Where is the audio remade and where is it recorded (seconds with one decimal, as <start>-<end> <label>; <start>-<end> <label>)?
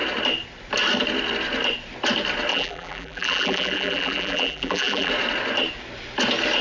0.0-2.5 recorded; 2.5-5.1 remade; 5.1-6.6 recorded